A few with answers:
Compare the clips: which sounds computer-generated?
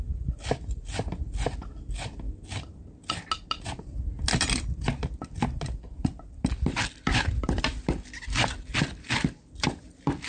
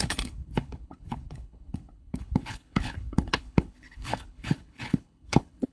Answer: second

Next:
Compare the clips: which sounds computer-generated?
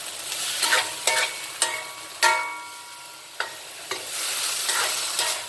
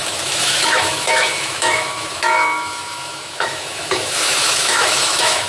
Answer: second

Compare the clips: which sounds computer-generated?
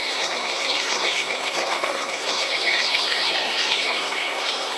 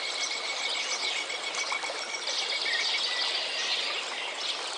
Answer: first